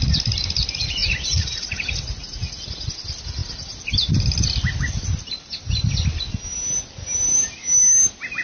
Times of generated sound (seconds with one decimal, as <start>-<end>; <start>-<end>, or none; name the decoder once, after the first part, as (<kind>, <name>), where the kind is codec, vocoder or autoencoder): 1.0-2.9 (vocoder, Vocos)

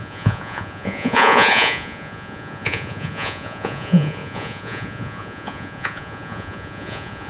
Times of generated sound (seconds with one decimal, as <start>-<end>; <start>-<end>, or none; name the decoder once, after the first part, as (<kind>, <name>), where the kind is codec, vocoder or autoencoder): 0.0-7.3 (vocoder, Vocos)

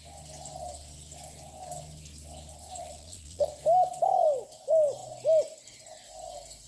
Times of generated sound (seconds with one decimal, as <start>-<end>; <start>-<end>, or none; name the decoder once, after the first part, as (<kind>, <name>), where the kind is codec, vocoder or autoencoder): 2.8-3.5 (vocoder, Vocos)

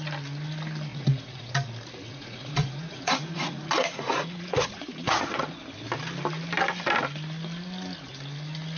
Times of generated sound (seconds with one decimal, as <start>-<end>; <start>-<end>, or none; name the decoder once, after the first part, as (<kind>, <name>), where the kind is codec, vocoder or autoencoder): 0.9-1.5 (vocoder, Vocos); 2.1-5.5

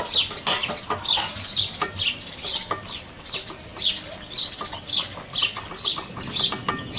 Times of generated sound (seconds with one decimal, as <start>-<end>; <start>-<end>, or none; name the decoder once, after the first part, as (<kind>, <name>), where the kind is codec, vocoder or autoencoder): none

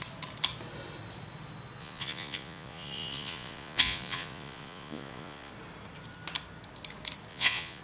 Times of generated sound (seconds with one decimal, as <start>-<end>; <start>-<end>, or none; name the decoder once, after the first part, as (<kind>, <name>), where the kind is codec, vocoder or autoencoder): 1.8-5.5 (vocoder, Vocos); 7.3-7.8

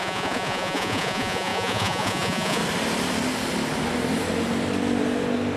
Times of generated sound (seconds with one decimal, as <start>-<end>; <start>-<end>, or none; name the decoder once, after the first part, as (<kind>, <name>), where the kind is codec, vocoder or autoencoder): 0.0-2.6 (vocoder, Vocos)

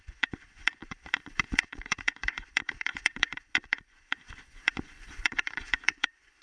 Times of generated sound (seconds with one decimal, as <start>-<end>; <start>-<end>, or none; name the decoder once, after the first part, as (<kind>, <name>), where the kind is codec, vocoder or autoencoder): 0.0-6.4 (vocoder, Vocos)